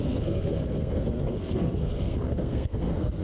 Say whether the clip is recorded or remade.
remade